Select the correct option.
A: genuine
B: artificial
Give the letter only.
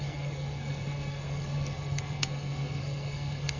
B